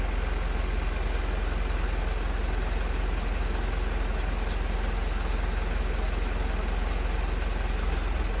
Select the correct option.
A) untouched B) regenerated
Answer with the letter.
A